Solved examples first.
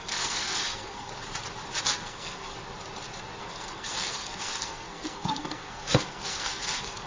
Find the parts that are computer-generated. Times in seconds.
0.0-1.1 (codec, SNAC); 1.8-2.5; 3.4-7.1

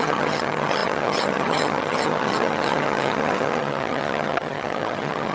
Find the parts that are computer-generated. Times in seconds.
0.0-5.3 (vocoder, HiFi-GAN)

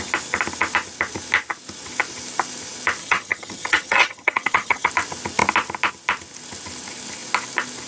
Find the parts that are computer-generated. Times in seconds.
3.0-4.9 (vocoder, HiFi-GAN)

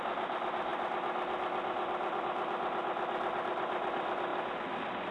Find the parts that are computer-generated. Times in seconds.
none

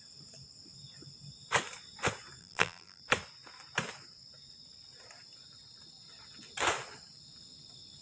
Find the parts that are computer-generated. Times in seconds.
2.4-3.0 (vocoder, BigVGAN v2)

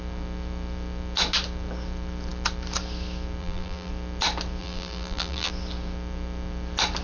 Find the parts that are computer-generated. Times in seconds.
3.4-3.9 (vocoder, BigVGAN v2); 4.6-5.5

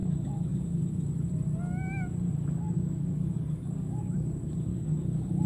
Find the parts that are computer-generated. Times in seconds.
0.0-0.8 (codec, DAC); 2.6-4.0; 4.7-5.5

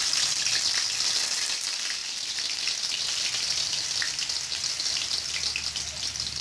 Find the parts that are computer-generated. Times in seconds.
none